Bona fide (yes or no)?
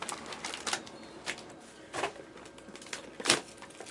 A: yes